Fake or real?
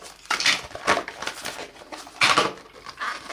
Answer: fake